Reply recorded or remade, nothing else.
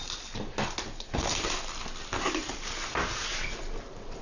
recorded